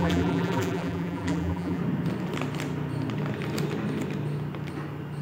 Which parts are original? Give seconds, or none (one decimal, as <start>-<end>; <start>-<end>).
1.8-5.2